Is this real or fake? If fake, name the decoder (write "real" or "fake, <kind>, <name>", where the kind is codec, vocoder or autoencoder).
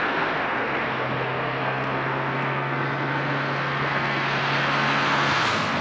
fake, codec, SNAC